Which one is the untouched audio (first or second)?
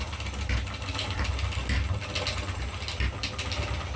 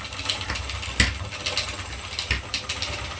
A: first